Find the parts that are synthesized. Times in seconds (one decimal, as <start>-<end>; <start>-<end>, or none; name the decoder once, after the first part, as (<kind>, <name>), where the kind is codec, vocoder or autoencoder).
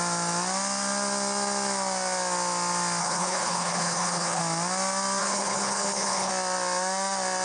3.0-4.4 (codec, HILCodec); 5.2-6.3